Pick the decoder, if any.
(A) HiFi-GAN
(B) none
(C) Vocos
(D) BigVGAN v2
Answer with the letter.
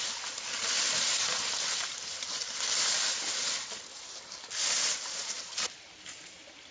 B